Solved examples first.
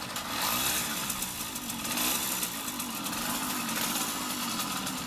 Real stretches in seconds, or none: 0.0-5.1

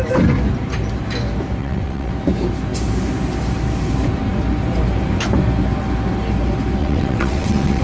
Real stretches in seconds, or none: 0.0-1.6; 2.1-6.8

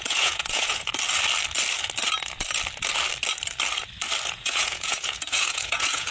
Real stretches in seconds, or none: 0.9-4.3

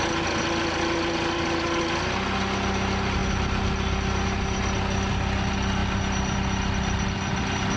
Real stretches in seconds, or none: 0.0-7.8